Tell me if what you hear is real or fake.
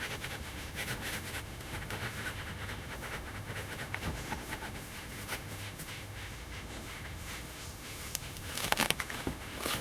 fake